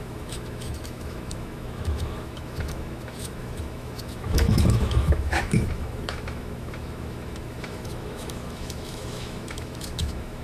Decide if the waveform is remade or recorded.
remade